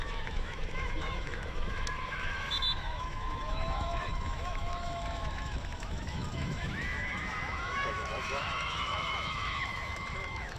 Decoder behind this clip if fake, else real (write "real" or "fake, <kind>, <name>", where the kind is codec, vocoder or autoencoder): fake, autoencoder, DAC-VAE